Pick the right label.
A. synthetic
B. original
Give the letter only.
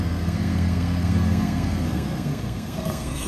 A